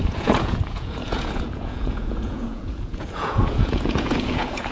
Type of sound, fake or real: fake